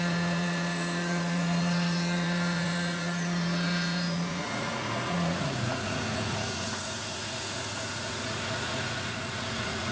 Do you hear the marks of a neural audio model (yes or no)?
yes